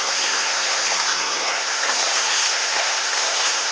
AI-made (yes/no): yes